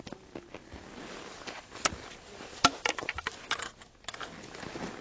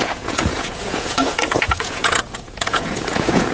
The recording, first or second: first